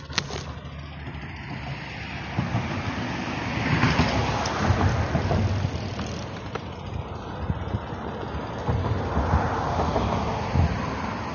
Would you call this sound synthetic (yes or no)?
no